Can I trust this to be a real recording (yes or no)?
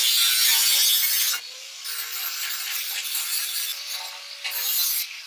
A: yes